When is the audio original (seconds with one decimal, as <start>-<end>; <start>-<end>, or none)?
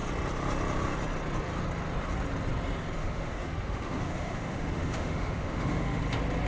0.0-3.0; 6.0-6.5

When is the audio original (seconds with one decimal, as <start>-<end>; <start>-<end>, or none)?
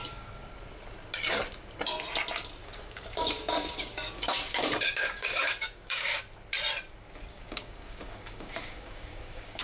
0.5-2.6; 6.2-7.3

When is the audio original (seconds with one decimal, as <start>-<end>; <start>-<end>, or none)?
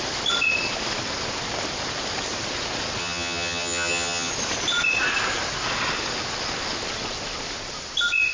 0.0-3.0; 4.3-8.3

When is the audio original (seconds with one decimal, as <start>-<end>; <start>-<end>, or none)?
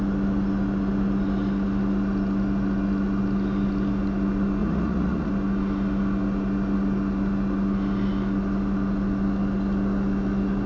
0.0-4.6; 5.3-10.7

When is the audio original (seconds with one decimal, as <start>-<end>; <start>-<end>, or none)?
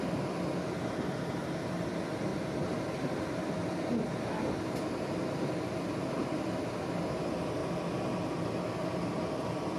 0.0-9.8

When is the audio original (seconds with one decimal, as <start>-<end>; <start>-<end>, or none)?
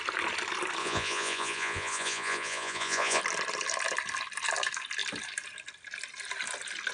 0.0-0.8; 3.2-6.9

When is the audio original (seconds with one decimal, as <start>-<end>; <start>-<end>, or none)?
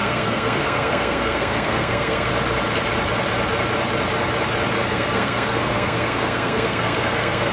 2.3-4.8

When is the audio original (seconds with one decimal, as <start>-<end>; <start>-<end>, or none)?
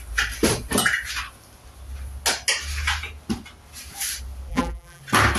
0.0-4.5; 5.0-5.4